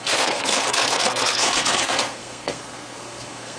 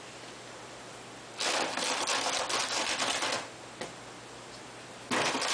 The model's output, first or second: first